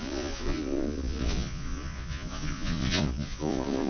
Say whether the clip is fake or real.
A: fake